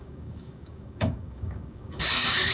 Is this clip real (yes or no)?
no